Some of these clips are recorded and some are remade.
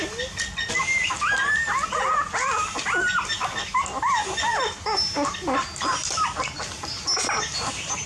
recorded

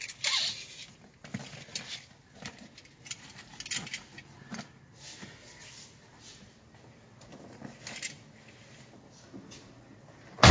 recorded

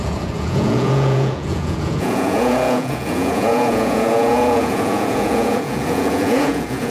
remade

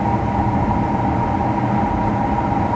recorded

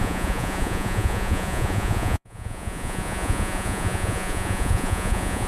remade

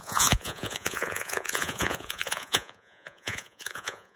remade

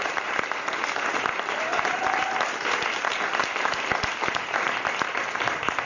recorded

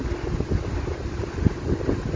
recorded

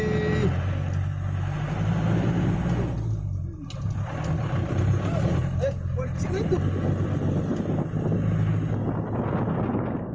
recorded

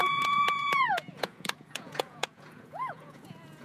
remade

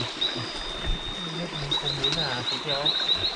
recorded